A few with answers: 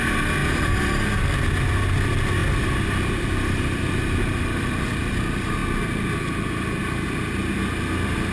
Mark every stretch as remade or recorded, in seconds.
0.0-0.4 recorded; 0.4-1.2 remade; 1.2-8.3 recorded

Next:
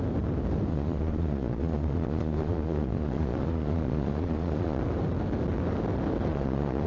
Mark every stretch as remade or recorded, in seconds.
0.0-0.7 recorded; 0.7-4.8 remade; 4.8-6.3 recorded; 6.3-6.9 remade

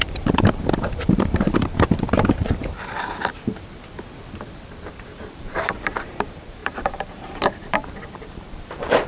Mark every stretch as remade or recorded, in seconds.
0.0-2.6 remade; 2.6-4.9 recorded; 4.9-9.1 remade

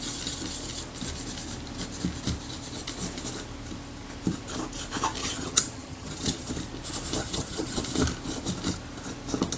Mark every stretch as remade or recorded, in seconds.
0.0-5.2 recorded; 5.2-6.5 remade; 6.5-7.2 recorded; 7.2-7.8 remade; 7.8-9.6 recorded